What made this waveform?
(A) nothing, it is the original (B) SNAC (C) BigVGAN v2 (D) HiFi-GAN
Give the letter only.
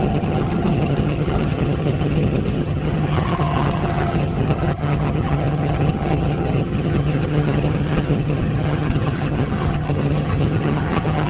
D